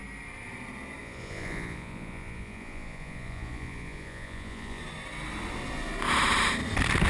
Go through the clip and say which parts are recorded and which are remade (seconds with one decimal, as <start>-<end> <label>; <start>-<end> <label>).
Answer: 0.0-1.0 recorded; 1.0-4.8 remade; 4.8-7.1 recorded